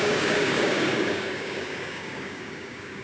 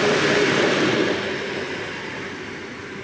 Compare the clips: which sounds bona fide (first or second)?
second